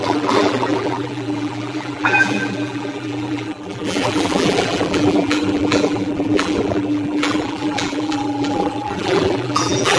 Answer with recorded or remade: remade